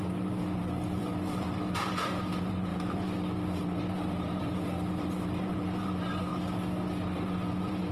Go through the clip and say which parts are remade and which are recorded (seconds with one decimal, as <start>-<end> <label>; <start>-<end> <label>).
0.0-6.3 remade; 6.3-7.2 recorded; 7.2-7.9 remade

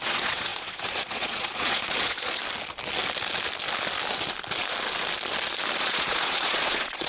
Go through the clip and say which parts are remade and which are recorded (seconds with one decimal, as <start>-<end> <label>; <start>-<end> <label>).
0.0-2.4 remade; 2.4-5.8 recorded; 5.8-7.1 remade

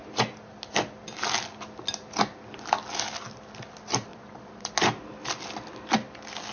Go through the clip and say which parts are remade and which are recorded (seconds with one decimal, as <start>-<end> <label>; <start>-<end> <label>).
0.0-4.1 recorded; 4.1-4.7 remade; 4.7-6.5 recorded

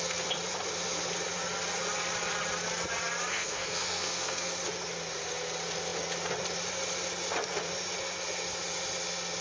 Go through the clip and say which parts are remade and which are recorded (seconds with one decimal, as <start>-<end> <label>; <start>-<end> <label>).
0.0-3.3 recorded; 3.3-4.5 remade; 4.5-9.4 recorded

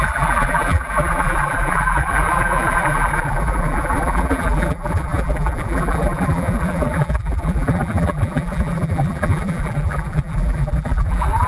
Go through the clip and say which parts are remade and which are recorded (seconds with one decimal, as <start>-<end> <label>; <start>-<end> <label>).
0.0-11.5 remade

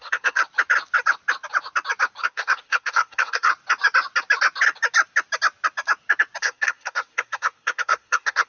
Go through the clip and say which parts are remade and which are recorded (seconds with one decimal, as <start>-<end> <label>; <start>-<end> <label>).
0.0-0.4 remade; 0.4-2.2 recorded; 2.2-3.5 remade; 3.5-6.4 recorded; 6.4-8.5 remade